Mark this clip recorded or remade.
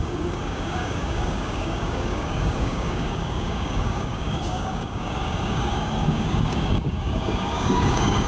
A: remade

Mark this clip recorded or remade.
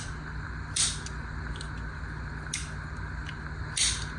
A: recorded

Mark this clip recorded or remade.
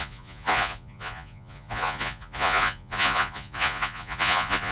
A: remade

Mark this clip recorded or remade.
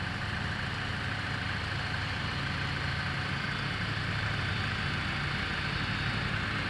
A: recorded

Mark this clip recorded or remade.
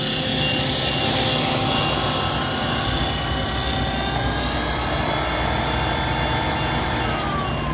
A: recorded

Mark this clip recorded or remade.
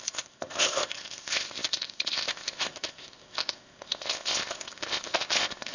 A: remade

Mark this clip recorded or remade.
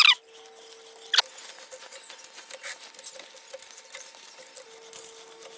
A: recorded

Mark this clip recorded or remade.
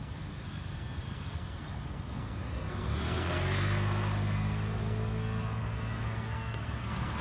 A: remade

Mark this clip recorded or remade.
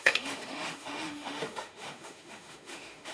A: remade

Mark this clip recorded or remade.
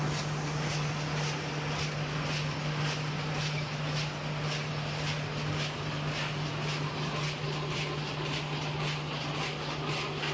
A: recorded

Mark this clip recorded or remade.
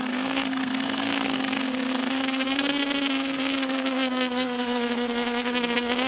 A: remade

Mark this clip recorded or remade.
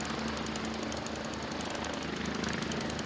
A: recorded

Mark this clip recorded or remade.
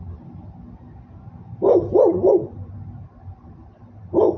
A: recorded